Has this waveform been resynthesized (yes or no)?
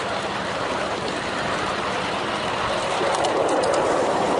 no